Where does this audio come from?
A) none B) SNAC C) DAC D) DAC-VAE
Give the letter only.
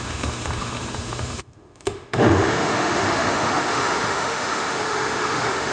D